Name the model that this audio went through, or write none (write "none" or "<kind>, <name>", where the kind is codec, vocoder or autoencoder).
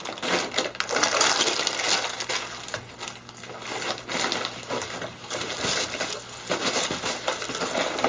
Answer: none